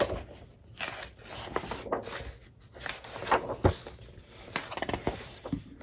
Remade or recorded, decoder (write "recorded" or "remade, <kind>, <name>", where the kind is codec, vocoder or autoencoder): recorded